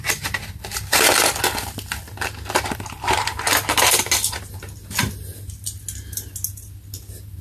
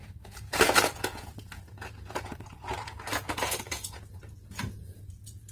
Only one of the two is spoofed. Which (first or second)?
second